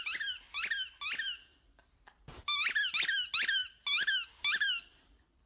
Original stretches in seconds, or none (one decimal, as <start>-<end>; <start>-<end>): 0.0-5.5